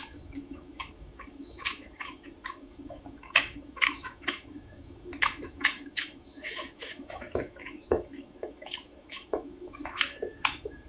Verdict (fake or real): fake